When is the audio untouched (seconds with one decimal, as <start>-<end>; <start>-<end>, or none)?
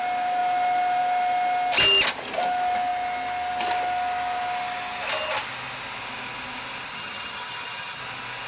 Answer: 0.0-6.9; 8.0-8.5